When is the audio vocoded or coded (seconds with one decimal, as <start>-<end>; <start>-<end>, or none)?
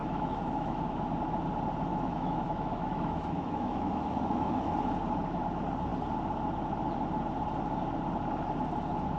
0.0-1.0; 1.9-4.7